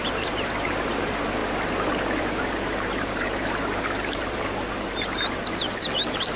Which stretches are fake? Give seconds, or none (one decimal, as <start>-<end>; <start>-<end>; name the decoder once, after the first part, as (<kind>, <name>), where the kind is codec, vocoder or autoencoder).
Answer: 0.0-1.4 (vocoder, BigVGAN v2); 2.2-6.4